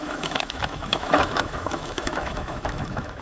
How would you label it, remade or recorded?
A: remade